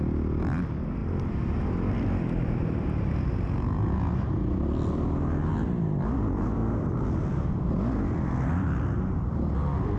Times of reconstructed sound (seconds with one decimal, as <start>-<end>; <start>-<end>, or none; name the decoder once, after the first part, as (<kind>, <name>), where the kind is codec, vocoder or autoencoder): none